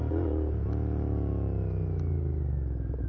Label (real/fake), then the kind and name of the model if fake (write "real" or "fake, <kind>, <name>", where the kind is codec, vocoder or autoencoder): real